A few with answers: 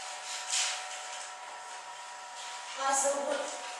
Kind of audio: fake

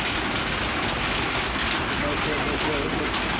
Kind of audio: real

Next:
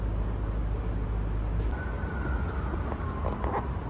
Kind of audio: real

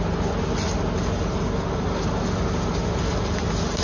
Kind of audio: real